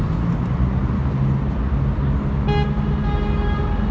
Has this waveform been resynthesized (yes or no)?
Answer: no